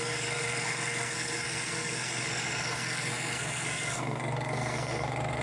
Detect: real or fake fake